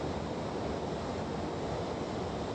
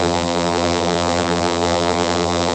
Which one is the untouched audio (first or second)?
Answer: first